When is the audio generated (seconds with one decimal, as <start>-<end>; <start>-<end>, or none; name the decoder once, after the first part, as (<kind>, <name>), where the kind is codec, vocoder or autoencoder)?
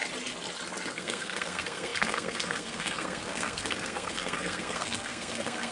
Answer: 0.9-5.7 (codec, SNAC)